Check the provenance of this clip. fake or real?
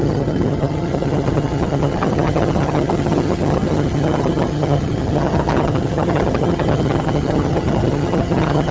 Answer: fake